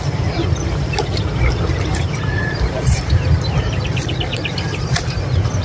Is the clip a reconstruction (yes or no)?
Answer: yes